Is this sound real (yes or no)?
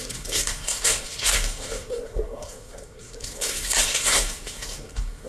no